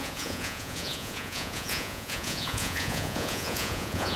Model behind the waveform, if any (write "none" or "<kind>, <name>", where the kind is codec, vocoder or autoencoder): vocoder, Vocos